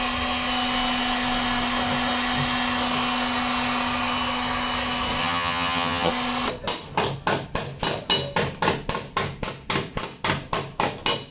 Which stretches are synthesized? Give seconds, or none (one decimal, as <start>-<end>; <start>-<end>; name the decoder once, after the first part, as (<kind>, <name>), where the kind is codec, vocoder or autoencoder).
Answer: 5.2-6.1 (vocoder, HiFi-GAN)